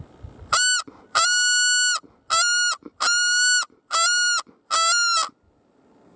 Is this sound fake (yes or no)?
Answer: no